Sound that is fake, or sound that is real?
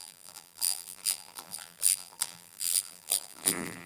fake